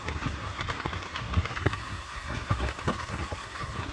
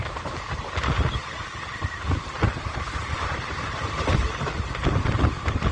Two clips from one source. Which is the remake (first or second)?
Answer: first